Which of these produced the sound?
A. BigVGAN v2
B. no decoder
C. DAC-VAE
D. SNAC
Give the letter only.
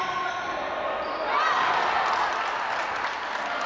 B